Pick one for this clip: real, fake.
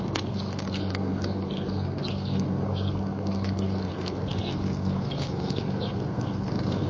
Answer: fake